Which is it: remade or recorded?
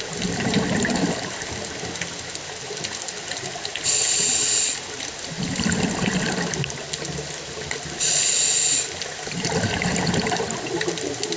recorded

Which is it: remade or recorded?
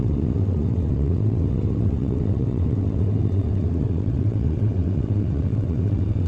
remade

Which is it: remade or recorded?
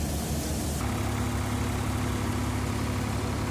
recorded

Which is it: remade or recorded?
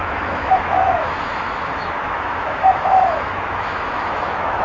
remade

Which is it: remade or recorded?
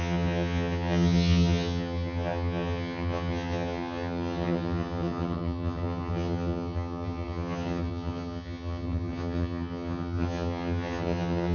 remade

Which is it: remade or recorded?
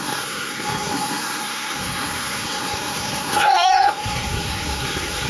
remade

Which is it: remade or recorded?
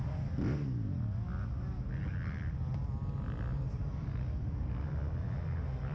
recorded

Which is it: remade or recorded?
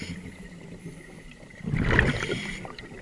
remade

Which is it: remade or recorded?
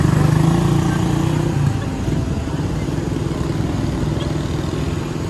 recorded